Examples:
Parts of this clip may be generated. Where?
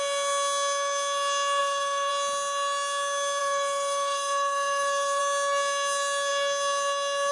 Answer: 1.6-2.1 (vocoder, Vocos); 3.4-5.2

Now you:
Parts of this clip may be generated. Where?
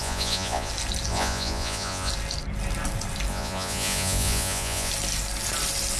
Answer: 0.0-0.7 (vocoder, Vocos); 1.1-2.1; 3.3-4.9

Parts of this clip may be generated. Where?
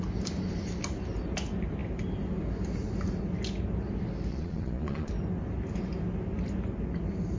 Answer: 4.3-5.1 (vocoder, Vocos)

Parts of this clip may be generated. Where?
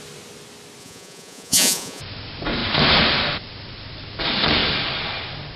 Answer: 0.8-2.0 (vocoder, Vocos)